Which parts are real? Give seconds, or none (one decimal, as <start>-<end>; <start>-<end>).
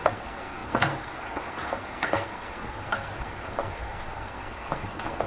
none